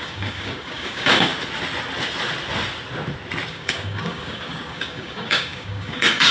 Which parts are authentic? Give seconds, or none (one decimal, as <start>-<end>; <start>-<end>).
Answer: 1.3-3.5